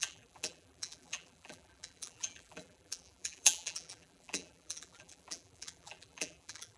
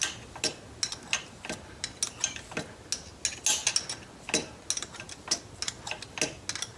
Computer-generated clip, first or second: first